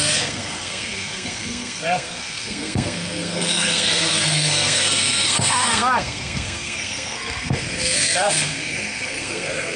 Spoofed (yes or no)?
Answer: yes